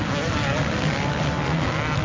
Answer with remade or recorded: recorded